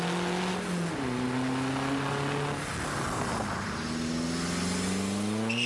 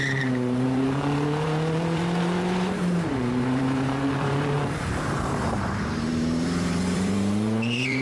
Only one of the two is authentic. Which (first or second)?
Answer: first